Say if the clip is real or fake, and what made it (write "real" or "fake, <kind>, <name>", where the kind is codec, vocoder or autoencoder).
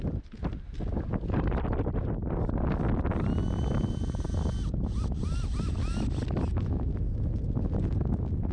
real